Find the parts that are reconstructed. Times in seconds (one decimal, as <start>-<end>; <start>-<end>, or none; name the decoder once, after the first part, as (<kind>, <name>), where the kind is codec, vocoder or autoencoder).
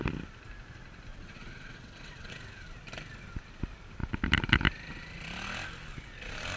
1.1-2.3 (vocoder, WaveNeXt)